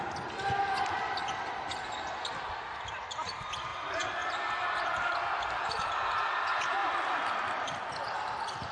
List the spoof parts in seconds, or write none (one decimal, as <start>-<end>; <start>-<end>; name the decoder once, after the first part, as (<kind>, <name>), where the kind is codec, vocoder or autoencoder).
none